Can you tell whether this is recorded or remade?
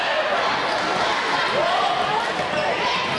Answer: recorded